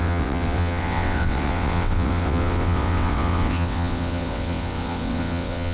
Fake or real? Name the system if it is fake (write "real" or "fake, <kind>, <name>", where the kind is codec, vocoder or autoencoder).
fake, vocoder, WaveNeXt